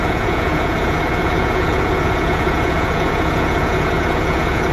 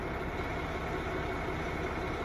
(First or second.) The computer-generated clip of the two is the first